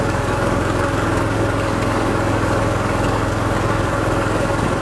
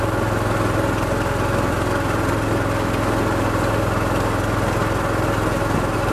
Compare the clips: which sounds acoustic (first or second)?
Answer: second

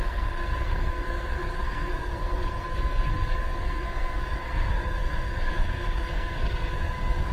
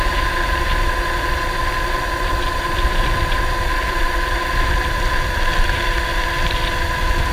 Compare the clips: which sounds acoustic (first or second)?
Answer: second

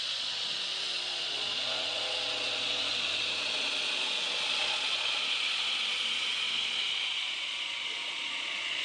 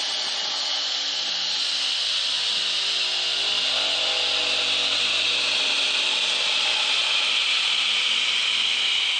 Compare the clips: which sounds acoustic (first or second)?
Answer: second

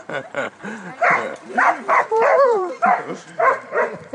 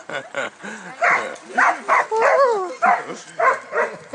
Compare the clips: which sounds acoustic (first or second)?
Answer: second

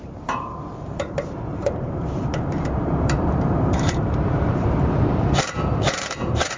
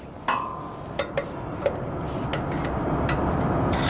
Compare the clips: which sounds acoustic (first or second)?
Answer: second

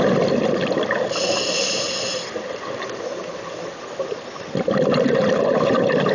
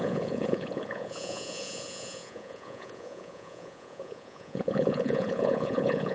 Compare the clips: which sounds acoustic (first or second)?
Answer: first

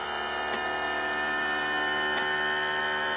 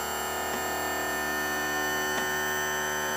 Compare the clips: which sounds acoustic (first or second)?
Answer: first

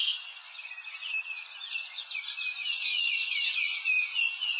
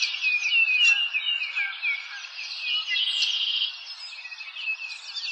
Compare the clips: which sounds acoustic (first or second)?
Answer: second